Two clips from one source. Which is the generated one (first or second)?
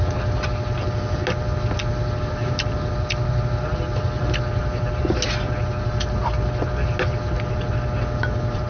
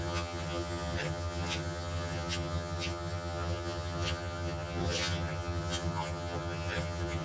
second